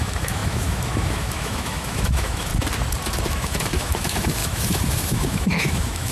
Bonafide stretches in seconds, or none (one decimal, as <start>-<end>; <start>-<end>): 2.5-3.3